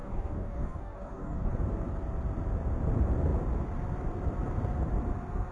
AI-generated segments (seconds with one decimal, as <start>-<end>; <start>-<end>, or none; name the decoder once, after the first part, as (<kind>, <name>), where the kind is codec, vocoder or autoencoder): 0.0-1.5 (codec, DAC)